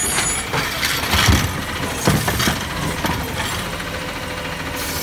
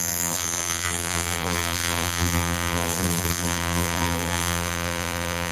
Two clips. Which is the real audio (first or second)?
first